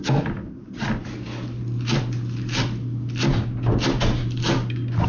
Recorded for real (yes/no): yes